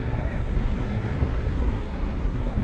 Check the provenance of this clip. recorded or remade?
remade